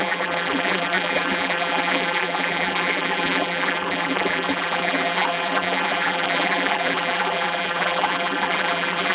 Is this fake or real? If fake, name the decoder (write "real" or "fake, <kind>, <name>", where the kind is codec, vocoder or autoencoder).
fake, vocoder, BigVGAN v2